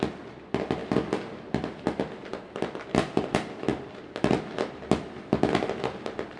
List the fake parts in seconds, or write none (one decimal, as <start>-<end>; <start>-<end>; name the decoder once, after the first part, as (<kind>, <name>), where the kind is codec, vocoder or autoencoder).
2.2-3.2 (vocoder, BigVGAN v2); 3.7-4.4